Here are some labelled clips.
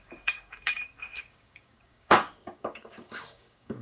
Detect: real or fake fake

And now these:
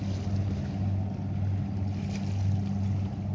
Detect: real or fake real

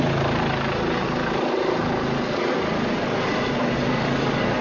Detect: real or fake real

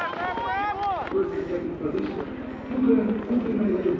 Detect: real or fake real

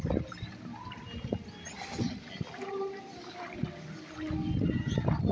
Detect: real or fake real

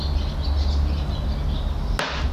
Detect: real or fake real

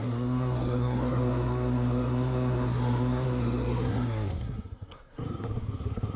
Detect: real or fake fake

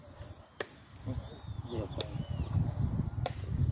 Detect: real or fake real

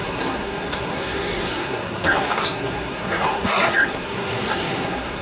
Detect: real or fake fake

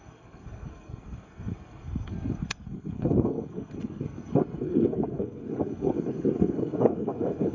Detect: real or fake fake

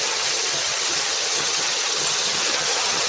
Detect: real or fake fake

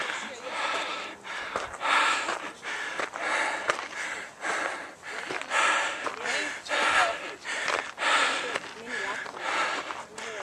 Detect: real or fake real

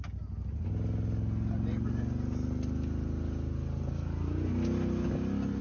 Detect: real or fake real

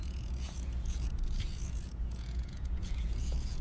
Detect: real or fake fake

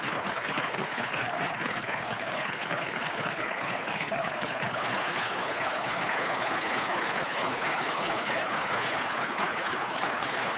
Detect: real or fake fake